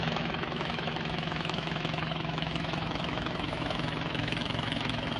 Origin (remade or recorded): remade